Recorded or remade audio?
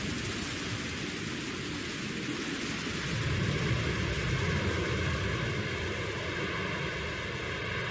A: recorded